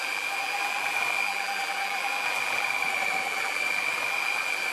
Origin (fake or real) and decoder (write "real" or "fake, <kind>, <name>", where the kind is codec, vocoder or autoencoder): fake, vocoder, BigVGAN v2